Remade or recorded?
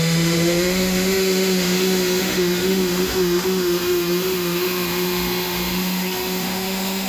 remade